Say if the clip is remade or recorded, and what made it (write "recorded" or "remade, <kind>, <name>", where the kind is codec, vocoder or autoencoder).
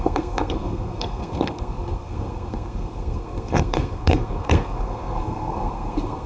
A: remade, codec, SNAC